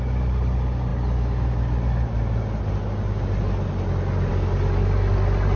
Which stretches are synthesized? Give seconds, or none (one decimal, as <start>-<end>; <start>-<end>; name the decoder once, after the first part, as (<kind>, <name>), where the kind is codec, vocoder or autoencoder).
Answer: none